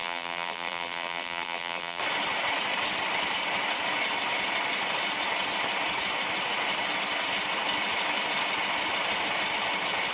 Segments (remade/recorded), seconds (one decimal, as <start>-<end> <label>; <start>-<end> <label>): 0.0-2.0 remade; 2.0-10.1 recorded

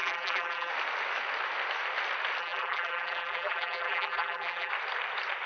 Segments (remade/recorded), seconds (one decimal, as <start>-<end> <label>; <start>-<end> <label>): 0.0-0.7 remade; 0.7-2.4 recorded; 2.4-4.7 remade; 4.7-5.5 recorded